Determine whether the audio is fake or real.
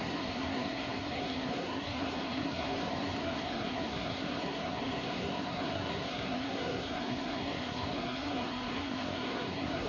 fake